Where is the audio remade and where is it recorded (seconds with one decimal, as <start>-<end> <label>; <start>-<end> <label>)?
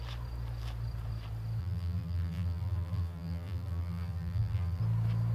0.0-1.6 recorded; 1.6-4.8 remade; 4.8-5.3 recorded